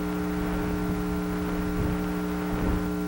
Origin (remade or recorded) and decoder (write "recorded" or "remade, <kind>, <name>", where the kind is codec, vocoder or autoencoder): recorded